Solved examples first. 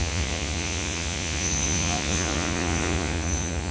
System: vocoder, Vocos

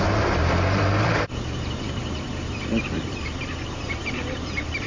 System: vocoder, BigVGAN v2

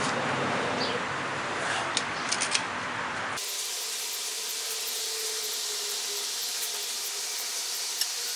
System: none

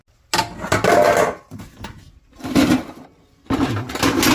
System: none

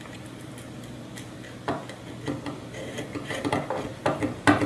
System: none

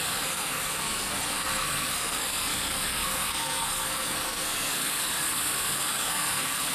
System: codec, SNAC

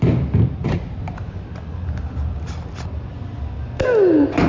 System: none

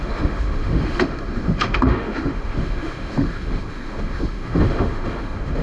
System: autoencoder, DAC-VAE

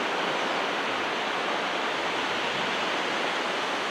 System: none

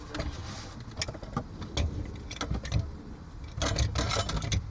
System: none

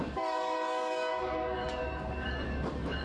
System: codec, DAC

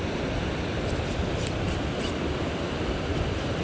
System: none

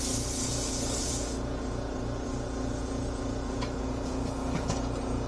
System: vocoder, Vocos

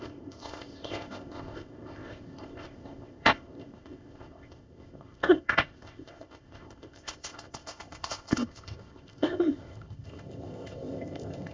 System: codec, ZipCodec